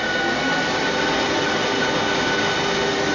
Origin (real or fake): real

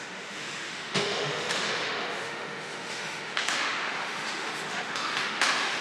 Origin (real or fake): fake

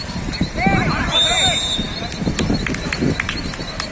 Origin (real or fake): real